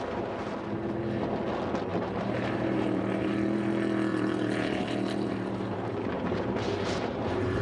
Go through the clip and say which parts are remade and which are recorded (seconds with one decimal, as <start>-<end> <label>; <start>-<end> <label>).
0.0-1.9 recorded; 1.9-3.3 remade; 3.3-4.1 recorded; 4.1-7.6 remade